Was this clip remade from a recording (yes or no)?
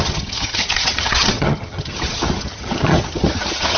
yes